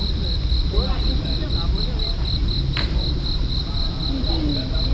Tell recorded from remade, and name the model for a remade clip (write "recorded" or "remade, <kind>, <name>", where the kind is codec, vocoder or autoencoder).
recorded